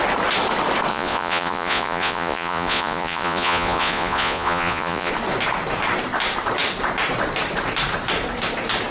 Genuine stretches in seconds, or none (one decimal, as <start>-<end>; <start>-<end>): 0.0-0.9; 5.1-8.9